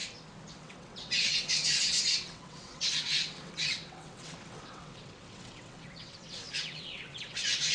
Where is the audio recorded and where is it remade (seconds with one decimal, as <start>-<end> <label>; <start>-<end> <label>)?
0.0-0.6 recorded; 0.6-7.7 remade